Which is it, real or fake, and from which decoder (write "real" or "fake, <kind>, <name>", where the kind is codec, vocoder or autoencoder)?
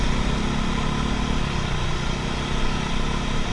real